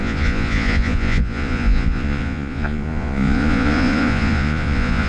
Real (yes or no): no